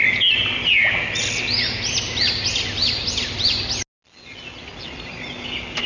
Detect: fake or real real